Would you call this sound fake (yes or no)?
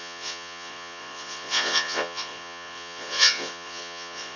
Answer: yes